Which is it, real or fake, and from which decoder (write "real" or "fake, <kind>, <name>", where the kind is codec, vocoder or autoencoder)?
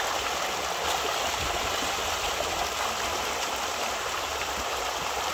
real